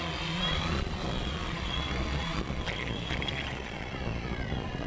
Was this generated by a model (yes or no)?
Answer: yes